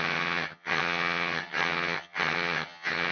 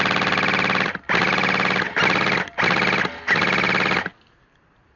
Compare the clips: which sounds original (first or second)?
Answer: second